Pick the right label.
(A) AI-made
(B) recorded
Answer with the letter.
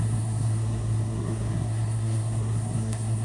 A